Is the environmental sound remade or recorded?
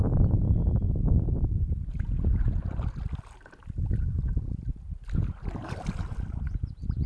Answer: recorded